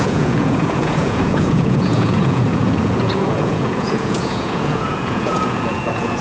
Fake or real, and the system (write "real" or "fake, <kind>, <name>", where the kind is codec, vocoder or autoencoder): fake, vocoder, Vocos